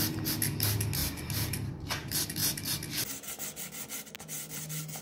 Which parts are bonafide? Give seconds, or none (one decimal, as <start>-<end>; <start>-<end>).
0.0-5.0